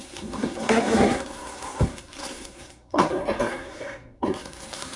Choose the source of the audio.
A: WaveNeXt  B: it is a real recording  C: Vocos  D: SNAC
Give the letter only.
D